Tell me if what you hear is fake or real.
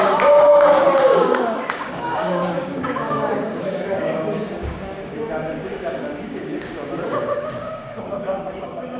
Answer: fake